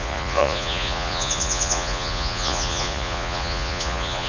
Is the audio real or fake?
fake